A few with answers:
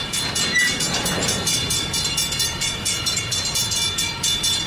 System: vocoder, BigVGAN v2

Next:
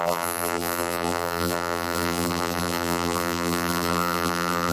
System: vocoder, BigVGAN v2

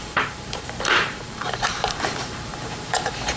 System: vocoder, BigVGAN v2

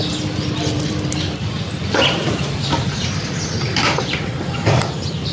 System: vocoder, BigVGAN v2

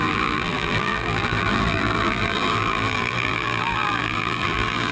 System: vocoder, BigVGAN v2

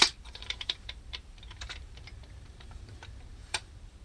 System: vocoder, BigVGAN v2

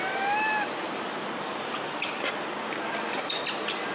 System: vocoder, BigVGAN v2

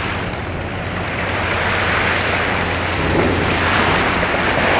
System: vocoder, BigVGAN v2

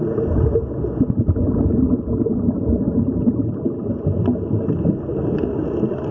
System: none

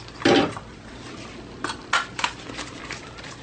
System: none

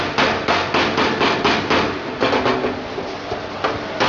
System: none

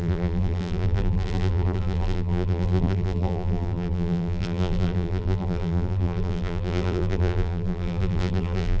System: vocoder, BigVGAN v2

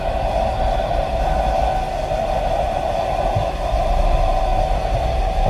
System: none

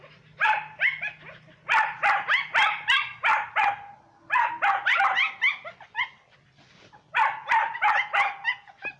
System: none